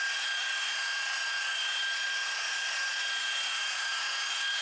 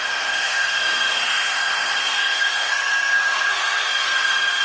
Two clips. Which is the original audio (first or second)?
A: first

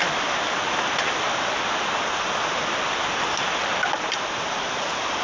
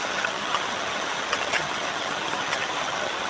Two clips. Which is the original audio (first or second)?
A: first